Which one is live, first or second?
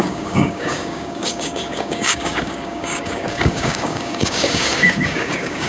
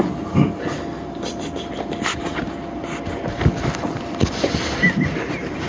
second